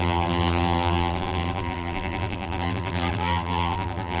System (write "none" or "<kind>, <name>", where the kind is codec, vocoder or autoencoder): vocoder, BigVGAN v2